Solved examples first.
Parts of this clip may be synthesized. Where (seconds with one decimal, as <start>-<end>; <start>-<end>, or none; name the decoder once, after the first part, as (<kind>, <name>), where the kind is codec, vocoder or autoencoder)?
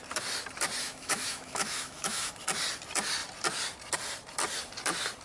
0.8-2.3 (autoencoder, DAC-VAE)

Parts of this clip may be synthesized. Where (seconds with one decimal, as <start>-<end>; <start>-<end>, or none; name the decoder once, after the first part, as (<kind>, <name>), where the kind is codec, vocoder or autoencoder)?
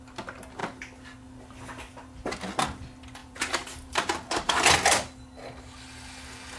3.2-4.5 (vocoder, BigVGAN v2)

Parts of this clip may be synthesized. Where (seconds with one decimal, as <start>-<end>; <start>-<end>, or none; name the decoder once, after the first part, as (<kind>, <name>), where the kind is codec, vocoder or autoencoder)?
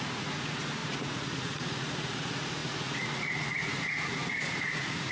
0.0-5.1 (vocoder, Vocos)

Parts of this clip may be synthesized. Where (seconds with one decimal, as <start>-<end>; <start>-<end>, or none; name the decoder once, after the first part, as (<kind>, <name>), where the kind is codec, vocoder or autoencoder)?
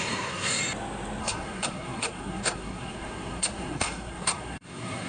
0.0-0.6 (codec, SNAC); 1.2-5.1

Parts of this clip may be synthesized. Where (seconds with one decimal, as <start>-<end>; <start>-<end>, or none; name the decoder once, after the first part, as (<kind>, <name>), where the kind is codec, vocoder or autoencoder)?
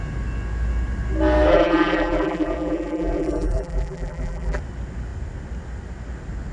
1.5-4.6 (vocoder, BigVGAN v2)